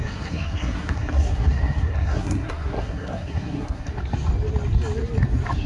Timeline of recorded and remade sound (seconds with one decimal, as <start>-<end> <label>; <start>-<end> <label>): 0.0-3.9 remade; 3.9-5.7 recorded